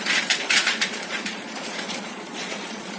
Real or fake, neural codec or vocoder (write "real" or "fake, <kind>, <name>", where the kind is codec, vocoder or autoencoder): fake, vocoder, Vocos